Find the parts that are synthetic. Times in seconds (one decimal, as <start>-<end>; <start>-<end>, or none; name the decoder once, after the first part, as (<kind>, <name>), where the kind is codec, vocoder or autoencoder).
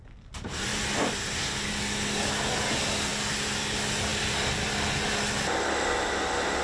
none